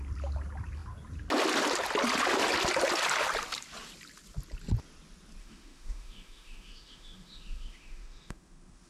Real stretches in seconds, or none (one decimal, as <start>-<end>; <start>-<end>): 0.0-5.4